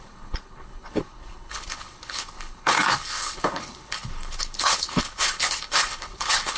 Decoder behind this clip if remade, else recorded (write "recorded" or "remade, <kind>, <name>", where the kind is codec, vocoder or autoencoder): remade, codec, HILCodec